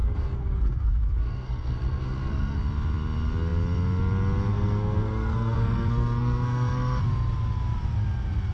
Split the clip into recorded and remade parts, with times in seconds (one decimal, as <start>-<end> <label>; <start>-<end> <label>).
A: 0.0-2.6 remade; 2.6-4.5 recorded; 4.5-7.0 remade; 7.0-8.5 recorded